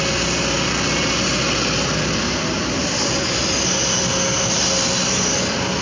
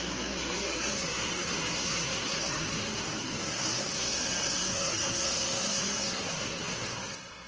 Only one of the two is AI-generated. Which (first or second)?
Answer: second